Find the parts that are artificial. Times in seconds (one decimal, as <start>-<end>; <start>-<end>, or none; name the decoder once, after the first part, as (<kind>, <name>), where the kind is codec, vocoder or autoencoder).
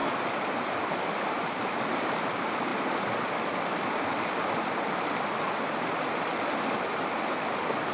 none